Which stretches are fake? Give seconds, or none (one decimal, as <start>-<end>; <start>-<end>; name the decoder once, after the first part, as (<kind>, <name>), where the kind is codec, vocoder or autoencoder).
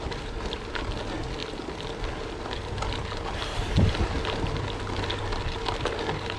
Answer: none